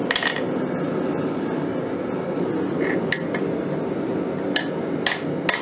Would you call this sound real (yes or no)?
yes